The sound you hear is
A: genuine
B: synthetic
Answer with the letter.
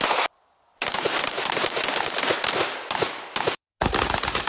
A